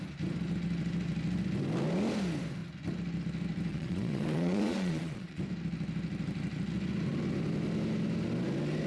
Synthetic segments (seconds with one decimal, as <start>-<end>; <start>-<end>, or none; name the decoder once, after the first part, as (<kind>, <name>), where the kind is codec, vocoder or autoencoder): 3.7-5.4 (vocoder, Vocos)